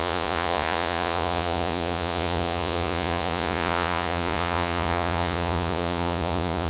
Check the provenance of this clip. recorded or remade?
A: remade